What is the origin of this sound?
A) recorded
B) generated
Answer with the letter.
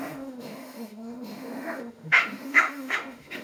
B